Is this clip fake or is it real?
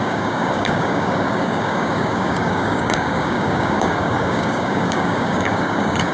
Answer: fake